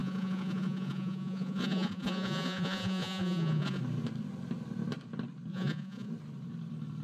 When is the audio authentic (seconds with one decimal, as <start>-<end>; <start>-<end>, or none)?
3.8-5.5; 6.1-7.0